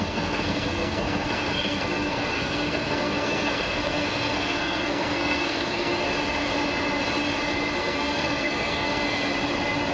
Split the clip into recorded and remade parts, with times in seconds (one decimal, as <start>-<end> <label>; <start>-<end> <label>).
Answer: 0.0-5.9 remade; 5.9-7.8 recorded; 7.8-9.3 remade; 9.3-9.9 recorded

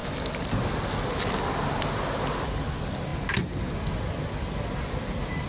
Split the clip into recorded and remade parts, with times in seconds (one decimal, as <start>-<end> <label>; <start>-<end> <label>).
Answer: 0.0-5.5 recorded

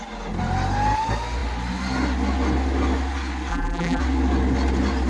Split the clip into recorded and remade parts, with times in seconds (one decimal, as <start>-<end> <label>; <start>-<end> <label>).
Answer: 0.0-3.5 recorded; 3.5-4.0 remade; 4.0-5.1 recorded

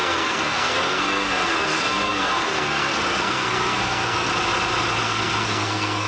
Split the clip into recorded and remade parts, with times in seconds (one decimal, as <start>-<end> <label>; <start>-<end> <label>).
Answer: 0.0-4.3 remade; 4.3-5.0 recorded; 5.0-6.1 remade

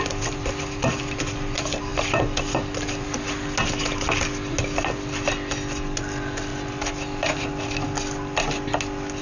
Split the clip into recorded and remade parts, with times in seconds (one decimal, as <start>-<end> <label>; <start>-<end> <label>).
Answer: 0.0-9.2 recorded

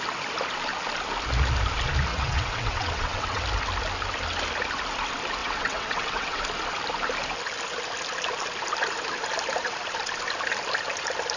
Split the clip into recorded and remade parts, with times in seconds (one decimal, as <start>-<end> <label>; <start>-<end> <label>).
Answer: 0.0-2.1 recorded; 2.1-3.4 remade; 3.4-5.4 recorded; 5.4-6.4 remade; 6.4-11.4 recorded

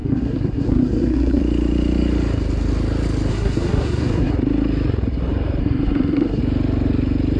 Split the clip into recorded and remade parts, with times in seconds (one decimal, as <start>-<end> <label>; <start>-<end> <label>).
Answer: 0.0-1.4 remade; 1.4-3.3 recorded; 3.3-4.3 remade; 4.3-5.6 recorded; 5.6-6.4 remade; 6.4-7.4 recorded

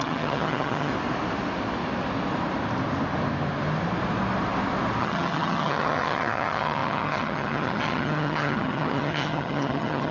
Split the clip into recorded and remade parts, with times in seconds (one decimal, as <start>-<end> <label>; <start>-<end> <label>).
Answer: 0.0-0.9 remade; 0.9-5.0 recorded; 5.0-10.1 remade